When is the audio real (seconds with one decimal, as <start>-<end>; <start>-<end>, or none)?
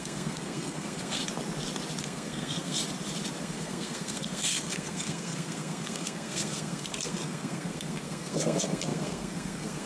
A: 1.2-2.0; 2.8-3.4